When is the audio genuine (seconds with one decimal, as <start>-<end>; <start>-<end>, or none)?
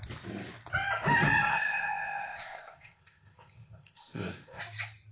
0.0-1.5; 4.6-5.1